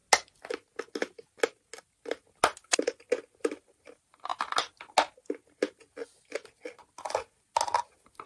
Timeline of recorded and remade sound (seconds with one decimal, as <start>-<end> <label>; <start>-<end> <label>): 0.0-3.4 recorded; 3.4-4.3 remade; 4.3-7.8 recorded; 7.8-8.3 remade

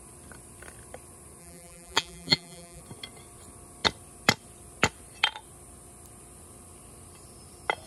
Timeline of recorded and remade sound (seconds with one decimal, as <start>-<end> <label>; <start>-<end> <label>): 0.0-1.4 recorded; 1.4-2.8 remade; 2.8-7.9 recorded